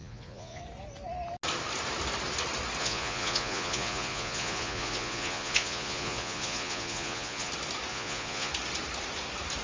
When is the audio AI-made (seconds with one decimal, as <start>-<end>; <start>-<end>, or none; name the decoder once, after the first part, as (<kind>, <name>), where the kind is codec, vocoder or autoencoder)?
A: 0.0-0.6 (vocoder, Vocos); 2.8-7.5; 7.9-8.5